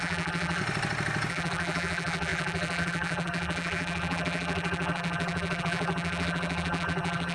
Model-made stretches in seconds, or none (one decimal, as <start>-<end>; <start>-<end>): 0.0-0.6; 1.3-7.3